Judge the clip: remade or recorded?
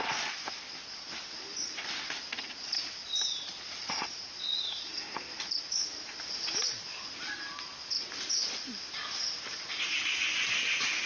recorded